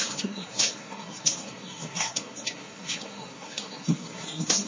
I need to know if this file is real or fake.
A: fake